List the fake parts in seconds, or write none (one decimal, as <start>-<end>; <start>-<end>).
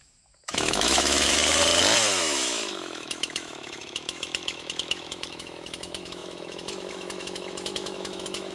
0.0-1.4; 2.2-8.5